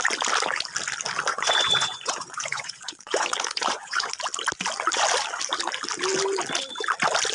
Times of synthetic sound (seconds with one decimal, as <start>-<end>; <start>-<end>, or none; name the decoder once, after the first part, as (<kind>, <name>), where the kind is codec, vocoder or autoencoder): 1.3-4.1 (vocoder, Vocos)